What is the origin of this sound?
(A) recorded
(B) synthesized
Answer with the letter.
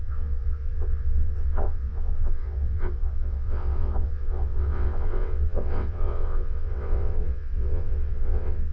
B